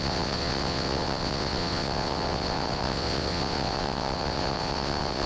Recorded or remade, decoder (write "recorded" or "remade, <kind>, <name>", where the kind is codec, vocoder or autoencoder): remade, vocoder, WaveNeXt